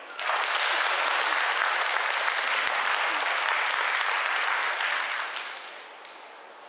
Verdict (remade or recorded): recorded